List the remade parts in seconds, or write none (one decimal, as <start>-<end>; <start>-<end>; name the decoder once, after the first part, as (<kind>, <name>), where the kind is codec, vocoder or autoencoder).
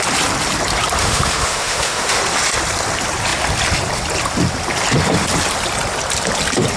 1.0-2.2 (autoencoder, DAC-VAE)